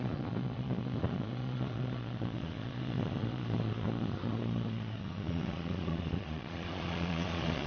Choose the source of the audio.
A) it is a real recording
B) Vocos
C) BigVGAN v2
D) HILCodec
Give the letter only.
B